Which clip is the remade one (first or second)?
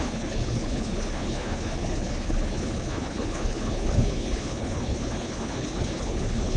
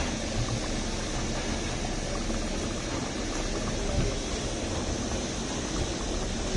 first